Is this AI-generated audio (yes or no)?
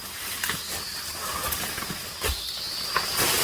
no